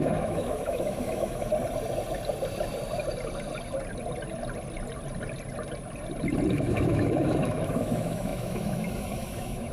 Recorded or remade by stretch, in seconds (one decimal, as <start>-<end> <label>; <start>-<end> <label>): 0.0-1.5 remade; 1.5-6.5 recorded; 6.5-9.7 remade